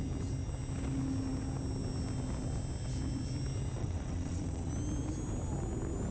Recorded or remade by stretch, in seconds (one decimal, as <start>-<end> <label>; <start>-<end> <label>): 0.0-3.8 recorded; 3.8-4.7 remade; 4.7-6.1 recorded